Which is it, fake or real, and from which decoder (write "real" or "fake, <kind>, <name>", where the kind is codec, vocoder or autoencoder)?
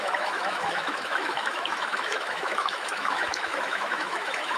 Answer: fake, autoencoder, DAC-VAE